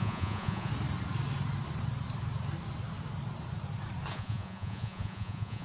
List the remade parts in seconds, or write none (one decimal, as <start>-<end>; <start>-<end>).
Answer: 0.0-0.7; 4.1-5.6